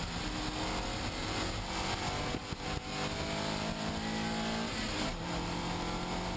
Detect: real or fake real